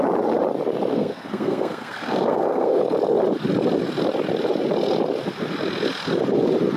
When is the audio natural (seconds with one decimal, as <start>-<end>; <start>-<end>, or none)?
0.0-0.9; 2.8-6.8